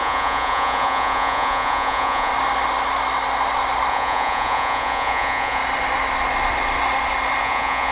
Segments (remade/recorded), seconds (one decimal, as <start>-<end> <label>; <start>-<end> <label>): 0.0-2.3 remade; 2.3-3.9 recorded; 3.9-5.6 remade; 5.6-7.4 recorded; 7.4-7.9 remade